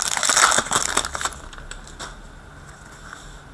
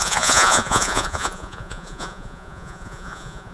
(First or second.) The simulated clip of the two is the second